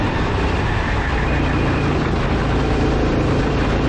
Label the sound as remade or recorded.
recorded